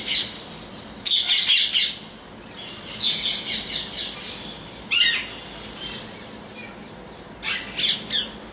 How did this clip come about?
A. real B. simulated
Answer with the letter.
A